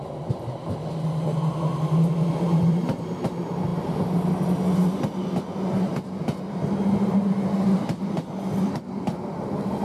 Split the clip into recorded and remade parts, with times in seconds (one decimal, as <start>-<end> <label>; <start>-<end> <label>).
0.0-9.8 recorded